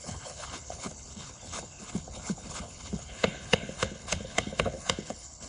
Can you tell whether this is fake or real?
fake